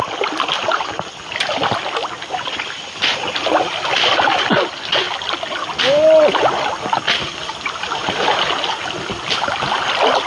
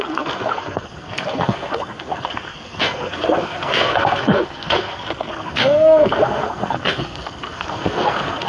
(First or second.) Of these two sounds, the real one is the first